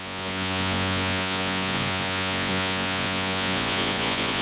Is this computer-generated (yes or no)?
yes